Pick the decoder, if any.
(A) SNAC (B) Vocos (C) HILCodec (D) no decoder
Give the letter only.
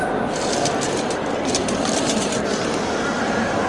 D